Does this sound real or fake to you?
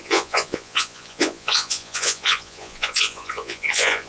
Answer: fake